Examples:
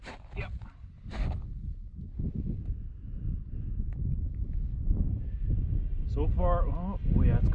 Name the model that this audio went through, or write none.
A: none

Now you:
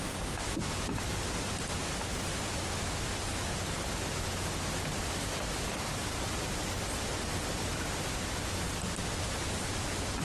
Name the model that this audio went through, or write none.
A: none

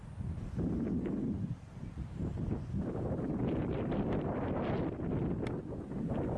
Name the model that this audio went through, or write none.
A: none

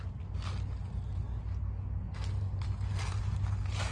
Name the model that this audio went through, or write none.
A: none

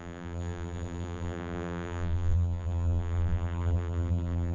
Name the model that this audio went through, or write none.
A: vocoder, BigVGAN v2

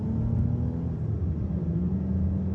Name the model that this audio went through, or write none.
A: none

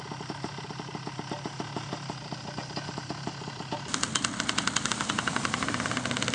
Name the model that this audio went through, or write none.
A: none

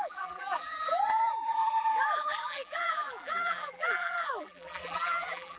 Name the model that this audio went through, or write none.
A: vocoder, BigVGAN v2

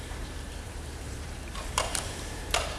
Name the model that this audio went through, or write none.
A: vocoder, BigVGAN v2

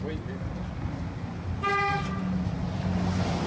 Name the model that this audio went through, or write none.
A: none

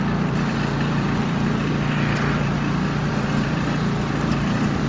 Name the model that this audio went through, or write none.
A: vocoder, BigVGAN v2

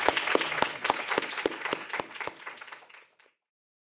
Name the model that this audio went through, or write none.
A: none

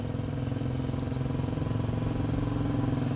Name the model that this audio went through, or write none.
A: none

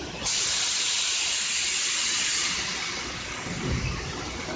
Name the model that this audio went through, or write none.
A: none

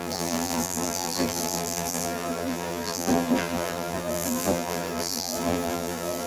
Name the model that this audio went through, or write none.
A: vocoder, BigVGAN v2